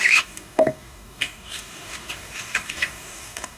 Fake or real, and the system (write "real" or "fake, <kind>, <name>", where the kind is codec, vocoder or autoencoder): fake, codec, DAC